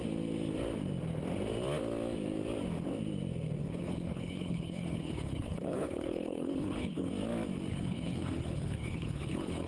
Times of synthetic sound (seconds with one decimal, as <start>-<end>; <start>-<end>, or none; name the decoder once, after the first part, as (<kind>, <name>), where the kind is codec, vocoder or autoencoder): 3.6-7.1 (codec, HILCodec); 7.7-9.7